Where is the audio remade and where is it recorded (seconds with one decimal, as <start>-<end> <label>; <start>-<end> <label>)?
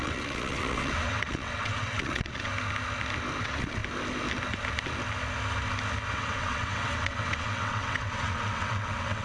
0.0-2.5 remade; 2.5-3.4 recorded; 3.4-3.8 remade; 3.8-6.1 recorded; 6.1-9.2 remade